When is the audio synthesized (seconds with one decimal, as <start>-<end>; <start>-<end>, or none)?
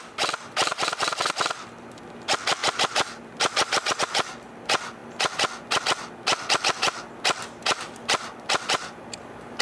none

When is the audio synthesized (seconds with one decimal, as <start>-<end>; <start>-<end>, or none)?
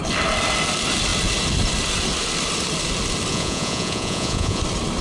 3.3-4.6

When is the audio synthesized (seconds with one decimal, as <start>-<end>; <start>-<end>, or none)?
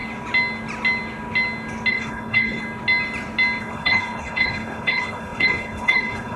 1.9-2.6; 3.6-6.4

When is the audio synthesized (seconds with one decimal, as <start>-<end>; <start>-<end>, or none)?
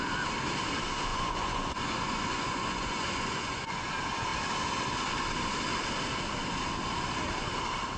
1.1-3.9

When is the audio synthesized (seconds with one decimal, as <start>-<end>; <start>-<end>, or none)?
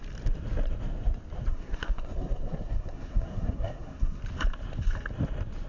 1.5-4.2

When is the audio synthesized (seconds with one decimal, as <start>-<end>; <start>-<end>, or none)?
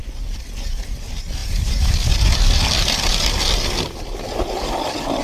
none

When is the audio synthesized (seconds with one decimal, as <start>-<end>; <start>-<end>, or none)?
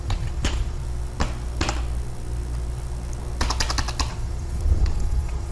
0.0-0.8; 4.1-5.5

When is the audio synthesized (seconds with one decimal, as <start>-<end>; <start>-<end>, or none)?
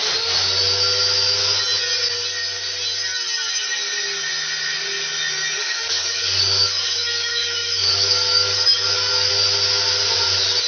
5.6-9.3